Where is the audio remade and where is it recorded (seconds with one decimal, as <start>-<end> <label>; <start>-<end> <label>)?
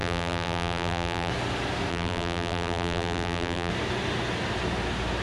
0.0-1.3 remade; 1.3-1.9 recorded; 1.9-3.7 remade; 3.7-5.2 recorded